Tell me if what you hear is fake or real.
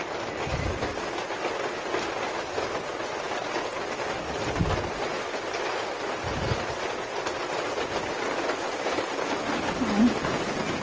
real